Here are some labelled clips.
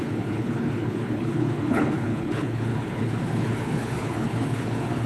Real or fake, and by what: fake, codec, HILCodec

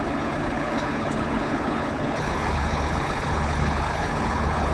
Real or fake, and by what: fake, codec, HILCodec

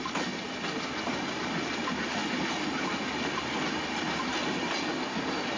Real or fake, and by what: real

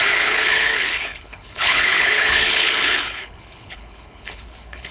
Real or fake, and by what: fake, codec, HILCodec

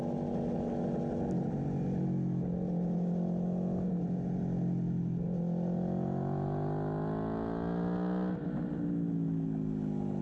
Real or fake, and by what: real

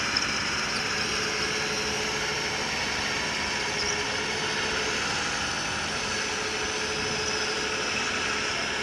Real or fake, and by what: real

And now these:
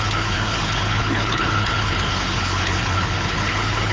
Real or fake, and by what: fake, codec, HILCodec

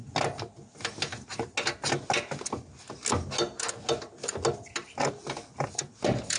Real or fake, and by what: real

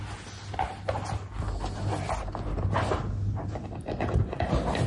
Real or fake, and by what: real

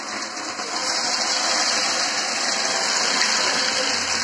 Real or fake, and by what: real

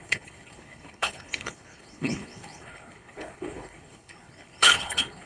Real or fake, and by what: fake, codec, HILCodec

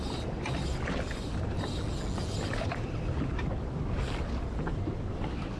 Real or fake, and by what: real